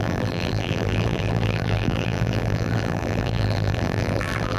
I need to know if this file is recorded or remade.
remade